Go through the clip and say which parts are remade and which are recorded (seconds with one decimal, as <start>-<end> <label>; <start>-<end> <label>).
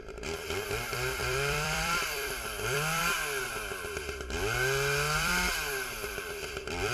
0.0-3.0 remade; 3.0-5.2 recorded; 5.2-6.9 remade